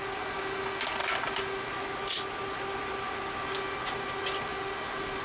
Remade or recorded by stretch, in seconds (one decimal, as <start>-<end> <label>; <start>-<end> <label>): 0.0-5.2 recorded